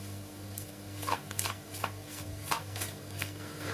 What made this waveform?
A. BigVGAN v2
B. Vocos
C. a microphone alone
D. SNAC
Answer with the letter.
D